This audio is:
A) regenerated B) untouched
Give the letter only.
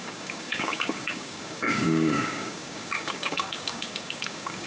A